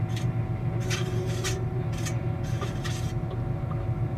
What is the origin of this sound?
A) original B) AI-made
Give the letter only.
B